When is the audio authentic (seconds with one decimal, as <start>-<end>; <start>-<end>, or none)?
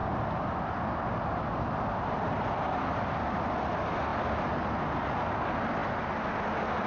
0.0-6.9